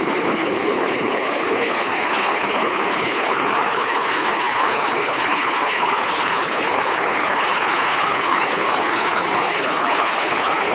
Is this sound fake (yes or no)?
yes